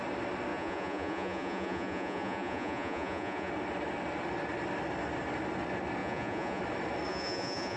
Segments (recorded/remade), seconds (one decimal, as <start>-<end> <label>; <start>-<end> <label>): 0.0-0.5 recorded; 0.5-3.5 remade; 3.5-6.0 recorded; 6.0-6.6 remade; 6.6-7.1 recorded; 7.1-7.8 remade

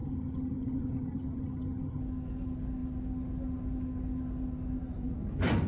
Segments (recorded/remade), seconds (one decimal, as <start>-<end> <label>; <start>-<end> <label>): 0.0-2.0 remade; 2.0-5.7 recorded

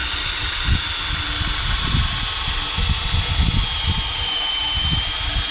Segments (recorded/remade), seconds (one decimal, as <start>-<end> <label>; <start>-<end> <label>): 0.0-5.5 recorded

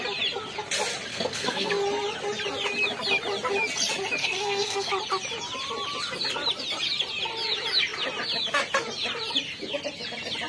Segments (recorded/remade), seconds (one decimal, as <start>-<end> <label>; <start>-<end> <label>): 0.0-1.1 recorded; 1.1-1.7 remade; 1.7-4.2 recorded; 4.2-4.9 remade; 4.9-10.5 recorded

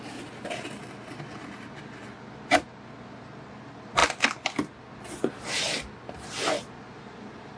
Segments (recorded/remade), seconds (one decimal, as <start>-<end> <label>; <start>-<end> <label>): 0.0-7.6 recorded